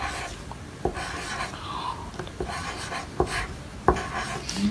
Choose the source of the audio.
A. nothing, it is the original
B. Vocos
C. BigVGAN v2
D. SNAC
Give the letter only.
A